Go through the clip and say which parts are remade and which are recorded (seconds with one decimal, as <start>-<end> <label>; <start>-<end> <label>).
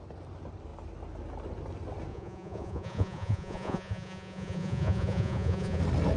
0.0-2.1 recorded; 2.1-5.8 remade; 5.8-6.2 recorded